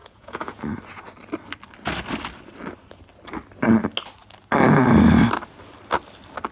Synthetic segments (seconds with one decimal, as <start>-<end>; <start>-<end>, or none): 0.0-0.6